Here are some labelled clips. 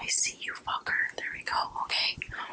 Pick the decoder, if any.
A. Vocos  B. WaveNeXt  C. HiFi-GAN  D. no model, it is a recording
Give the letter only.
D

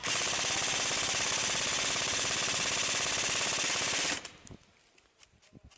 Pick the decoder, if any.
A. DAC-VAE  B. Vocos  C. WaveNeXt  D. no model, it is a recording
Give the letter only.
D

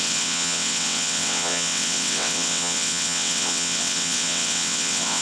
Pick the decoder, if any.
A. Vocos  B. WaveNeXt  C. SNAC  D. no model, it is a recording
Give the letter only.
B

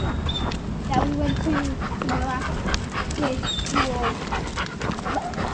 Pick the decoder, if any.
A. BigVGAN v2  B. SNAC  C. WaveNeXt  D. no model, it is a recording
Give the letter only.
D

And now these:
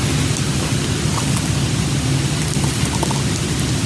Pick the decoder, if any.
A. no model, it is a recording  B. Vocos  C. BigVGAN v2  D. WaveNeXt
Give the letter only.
A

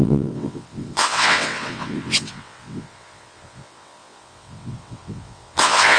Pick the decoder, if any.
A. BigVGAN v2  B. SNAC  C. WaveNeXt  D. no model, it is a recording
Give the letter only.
C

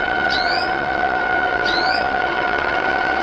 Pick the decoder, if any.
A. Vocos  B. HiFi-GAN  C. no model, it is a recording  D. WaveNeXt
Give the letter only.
D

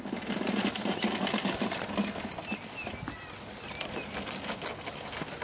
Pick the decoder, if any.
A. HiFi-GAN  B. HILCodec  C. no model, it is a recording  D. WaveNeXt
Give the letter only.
C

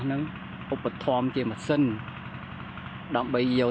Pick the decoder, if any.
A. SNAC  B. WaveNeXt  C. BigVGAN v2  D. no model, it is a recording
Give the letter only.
D